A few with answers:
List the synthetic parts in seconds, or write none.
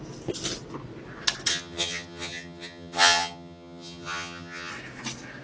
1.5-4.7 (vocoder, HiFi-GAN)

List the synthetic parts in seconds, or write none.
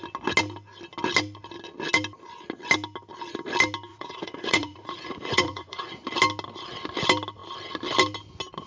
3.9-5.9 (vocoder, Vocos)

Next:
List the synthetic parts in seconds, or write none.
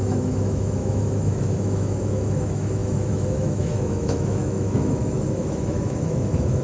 0.0-6.6 (autoencoder, DAC-VAE)